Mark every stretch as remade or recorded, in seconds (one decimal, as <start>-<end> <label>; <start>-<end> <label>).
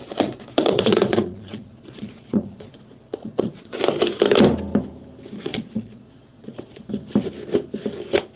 0.0-3.8 remade; 3.8-5.5 recorded; 5.5-6.9 remade; 6.9-8.4 recorded